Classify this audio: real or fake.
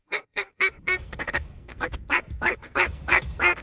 fake